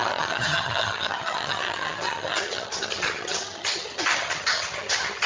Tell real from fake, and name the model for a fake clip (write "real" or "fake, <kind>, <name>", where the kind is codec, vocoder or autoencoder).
fake, vocoder, HiFi-GAN